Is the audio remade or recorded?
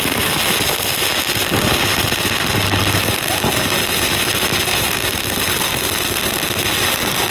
recorded